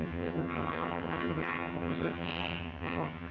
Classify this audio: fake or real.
fake